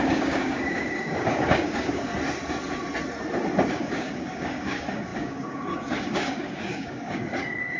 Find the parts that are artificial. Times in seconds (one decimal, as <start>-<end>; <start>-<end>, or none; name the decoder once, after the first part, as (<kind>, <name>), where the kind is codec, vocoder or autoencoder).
0.0-2.1 (codec, DAC); 3.7-7.8